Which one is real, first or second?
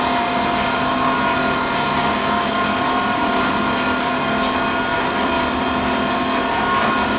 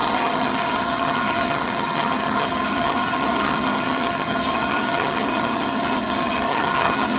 first